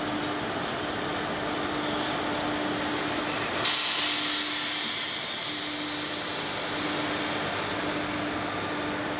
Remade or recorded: recorded